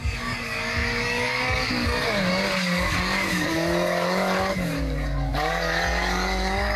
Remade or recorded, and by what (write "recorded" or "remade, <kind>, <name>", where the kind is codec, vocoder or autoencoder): remade, codec, DAC